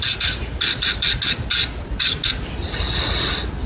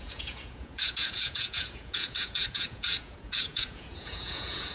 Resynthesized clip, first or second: second